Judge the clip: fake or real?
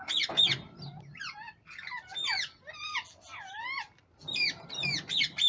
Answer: real